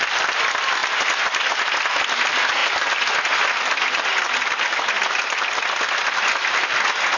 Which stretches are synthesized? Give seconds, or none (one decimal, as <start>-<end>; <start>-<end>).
none